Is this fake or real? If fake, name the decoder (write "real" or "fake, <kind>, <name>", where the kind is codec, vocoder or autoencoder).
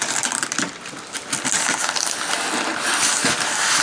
real